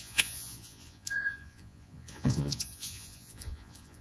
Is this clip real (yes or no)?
no